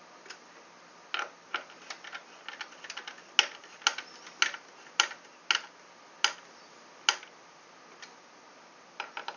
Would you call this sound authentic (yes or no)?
yes